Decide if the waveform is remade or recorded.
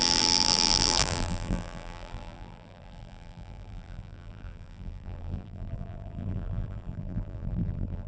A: remade